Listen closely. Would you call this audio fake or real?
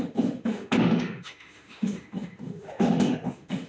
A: fake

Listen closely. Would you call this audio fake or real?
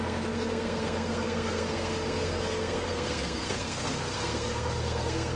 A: fake